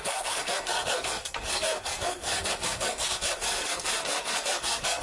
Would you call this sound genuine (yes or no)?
no